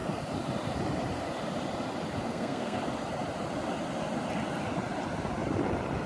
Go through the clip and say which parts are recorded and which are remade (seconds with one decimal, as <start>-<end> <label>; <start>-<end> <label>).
0.0-2.3 recorded; 2.3-2.8 remade; 2.8-6.1 recorded